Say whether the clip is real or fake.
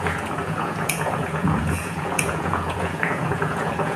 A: fake